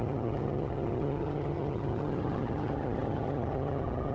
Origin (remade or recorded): remade